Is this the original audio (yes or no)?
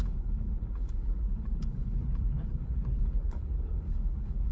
no